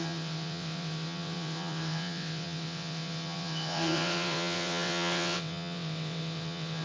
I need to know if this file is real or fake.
fake